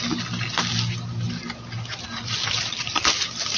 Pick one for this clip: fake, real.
real